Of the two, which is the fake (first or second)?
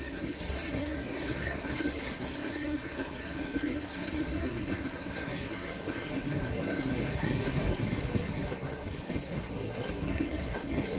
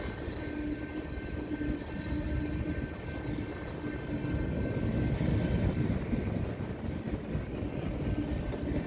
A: first